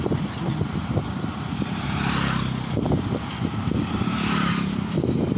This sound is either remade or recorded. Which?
remade